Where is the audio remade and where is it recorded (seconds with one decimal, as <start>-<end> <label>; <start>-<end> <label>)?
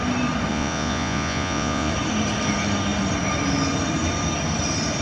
0.0-0.5 recorded; 0.5-1.9 remade; 1.9-5.0 recorded